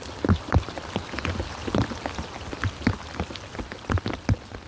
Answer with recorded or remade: recorded